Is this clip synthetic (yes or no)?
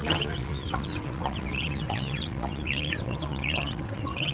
yes